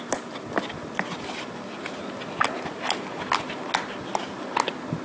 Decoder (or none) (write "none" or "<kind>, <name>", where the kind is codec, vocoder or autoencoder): none